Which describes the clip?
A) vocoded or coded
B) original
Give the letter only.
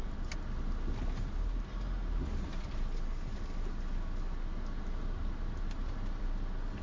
B